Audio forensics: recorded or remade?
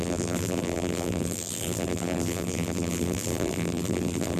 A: remade